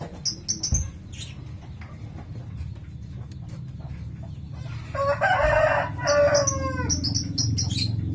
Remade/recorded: recorded